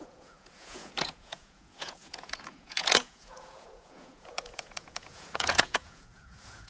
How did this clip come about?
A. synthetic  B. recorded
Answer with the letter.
A